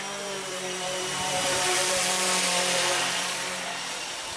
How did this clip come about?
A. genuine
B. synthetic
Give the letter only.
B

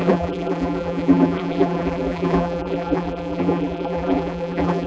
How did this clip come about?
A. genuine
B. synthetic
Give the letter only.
B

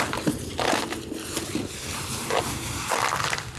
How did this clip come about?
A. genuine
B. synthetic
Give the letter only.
A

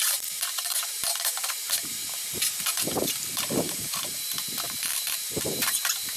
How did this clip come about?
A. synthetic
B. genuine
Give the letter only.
A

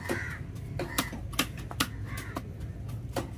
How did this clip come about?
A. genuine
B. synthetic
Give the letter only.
A